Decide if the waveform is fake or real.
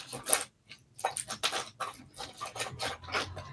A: real